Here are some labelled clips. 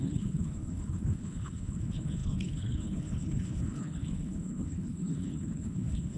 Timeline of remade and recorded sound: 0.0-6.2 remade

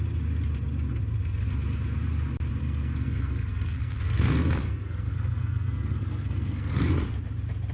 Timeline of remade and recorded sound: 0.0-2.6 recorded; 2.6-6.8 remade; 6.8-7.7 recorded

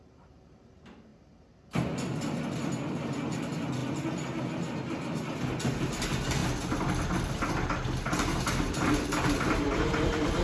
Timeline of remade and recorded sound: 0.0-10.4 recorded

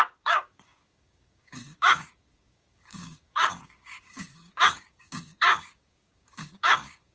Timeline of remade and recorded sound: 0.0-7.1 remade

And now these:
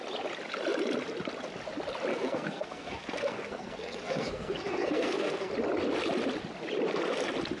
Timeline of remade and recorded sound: 0.0-2.1 recorded; 2.1-5.5 remade; 5.5-7.6 recorded